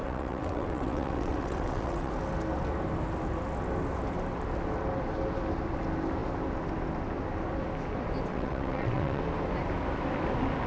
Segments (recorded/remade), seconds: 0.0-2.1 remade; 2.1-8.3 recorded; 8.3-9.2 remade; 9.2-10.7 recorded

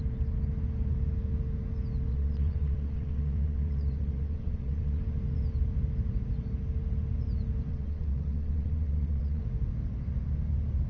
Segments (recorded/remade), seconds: 0.0-2.1 recorded; 2.1-5.0 remade; 5.0-7.7 recorded; 7.7-9.4 remade; 9.4-10.9 recorded

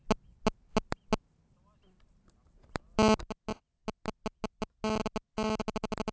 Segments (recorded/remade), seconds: 0.0-6.1 recorded

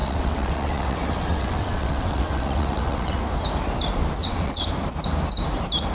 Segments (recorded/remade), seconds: 0.0-3.2 remade; 3.2-4.2 recorded; 4.2-4.7 remade; 4.7-5.9 recorded

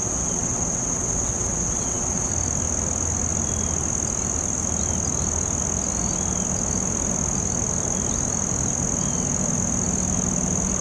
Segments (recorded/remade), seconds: 0.0-2.3 remade; 2.3-10.8 recorded